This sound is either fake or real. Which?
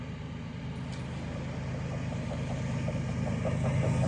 real